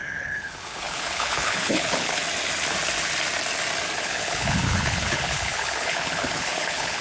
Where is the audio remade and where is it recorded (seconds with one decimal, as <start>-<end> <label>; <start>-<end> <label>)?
0.0-2.2 remade; 2.2-4.0 recorded; 4.0-7.0 remade